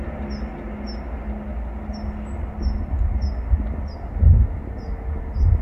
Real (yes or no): yes